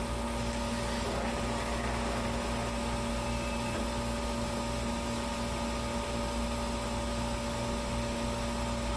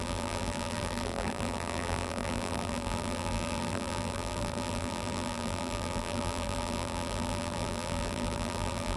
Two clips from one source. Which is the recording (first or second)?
first